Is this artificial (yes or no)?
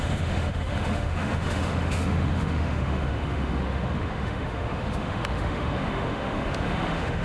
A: yes